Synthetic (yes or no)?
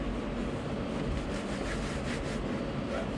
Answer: no